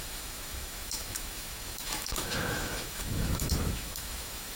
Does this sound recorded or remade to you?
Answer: remade